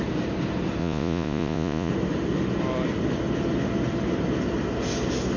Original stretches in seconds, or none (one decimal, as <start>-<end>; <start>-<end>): 0.0-0.8; 1.9-5.4